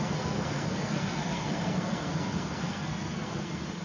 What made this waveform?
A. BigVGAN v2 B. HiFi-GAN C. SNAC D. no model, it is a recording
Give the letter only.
C